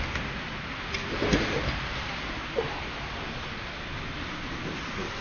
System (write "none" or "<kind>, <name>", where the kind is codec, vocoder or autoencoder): none